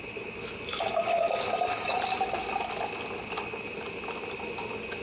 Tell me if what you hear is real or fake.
real